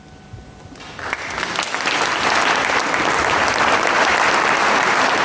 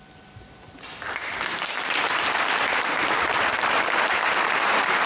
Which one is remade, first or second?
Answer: second